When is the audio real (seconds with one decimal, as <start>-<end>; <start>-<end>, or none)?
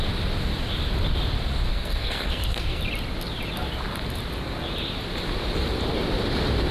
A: 0.0-1.7; 2.8-6.7